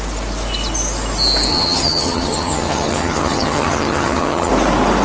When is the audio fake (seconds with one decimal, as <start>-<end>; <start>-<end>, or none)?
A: 1.5-4.5